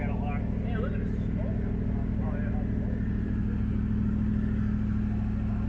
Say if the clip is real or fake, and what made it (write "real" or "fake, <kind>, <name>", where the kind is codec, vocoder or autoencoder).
real